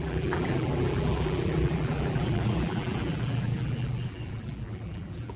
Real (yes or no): no